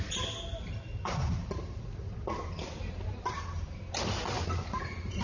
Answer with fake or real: real